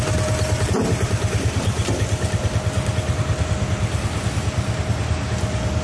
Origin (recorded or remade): recorded